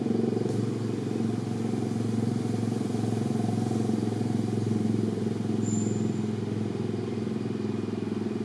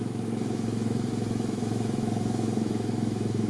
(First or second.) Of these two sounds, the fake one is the second